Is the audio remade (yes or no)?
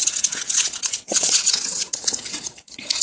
yes